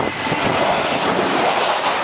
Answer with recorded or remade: recorded